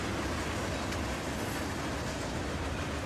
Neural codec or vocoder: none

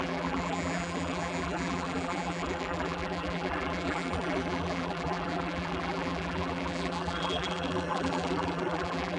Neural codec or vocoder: vocoder, BigVGAN v2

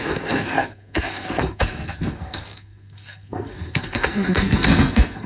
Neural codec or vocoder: codec, SNAC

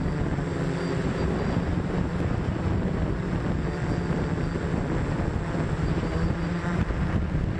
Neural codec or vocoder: none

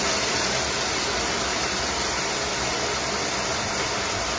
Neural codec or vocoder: none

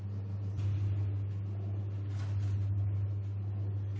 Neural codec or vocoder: none